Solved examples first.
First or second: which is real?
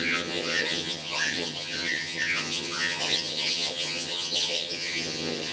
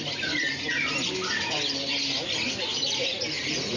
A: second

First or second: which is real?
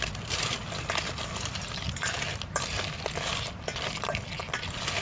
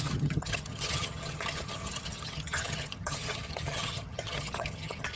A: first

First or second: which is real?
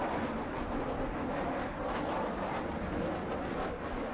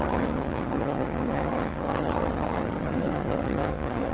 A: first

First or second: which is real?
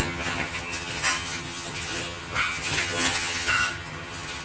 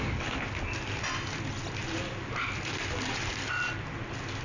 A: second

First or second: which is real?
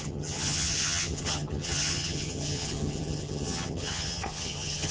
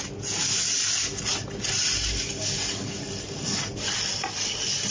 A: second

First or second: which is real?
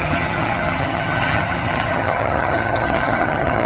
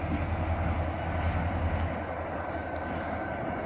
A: second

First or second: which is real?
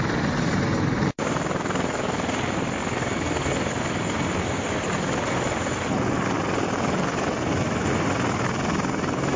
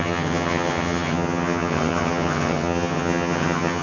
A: first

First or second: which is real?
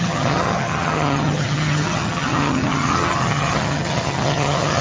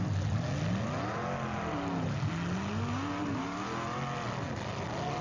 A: second